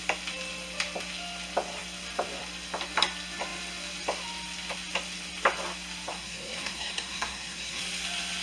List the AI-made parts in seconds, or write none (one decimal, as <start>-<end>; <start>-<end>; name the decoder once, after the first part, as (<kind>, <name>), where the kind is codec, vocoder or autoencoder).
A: 6.1-7.8 (codec, SNAC)